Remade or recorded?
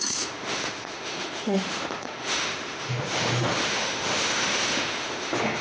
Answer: remade